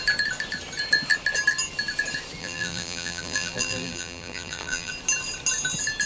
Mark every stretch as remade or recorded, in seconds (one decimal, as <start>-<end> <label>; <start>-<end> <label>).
0.0-2.4 recorded; 2.4-4.9 remade; 4.9-6.1 recorded